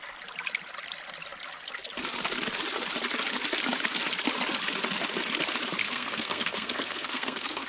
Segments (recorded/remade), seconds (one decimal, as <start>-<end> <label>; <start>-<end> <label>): 0.0-5.8 recorded; 5.8-7.7 remade